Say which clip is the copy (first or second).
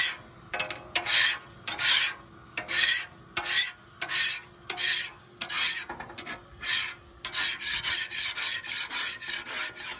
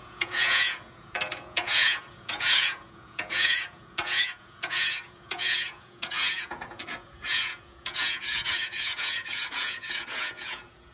second